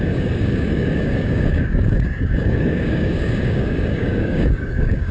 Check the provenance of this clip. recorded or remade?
remade